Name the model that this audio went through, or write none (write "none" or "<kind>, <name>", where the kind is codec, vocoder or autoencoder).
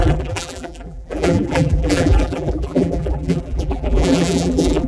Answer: vocoder, BigVGAN v2